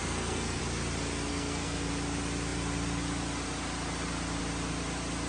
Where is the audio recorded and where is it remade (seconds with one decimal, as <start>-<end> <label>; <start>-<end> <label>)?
0.0-0.6 remade; 0.6-1.3 recorded; 1.3-1.9 remade; 1.9-5.3 recorded